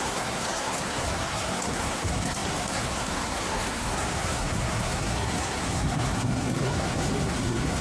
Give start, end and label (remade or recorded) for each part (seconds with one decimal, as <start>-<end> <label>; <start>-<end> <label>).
0.0-7.8 remade